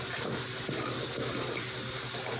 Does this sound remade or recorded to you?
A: recorded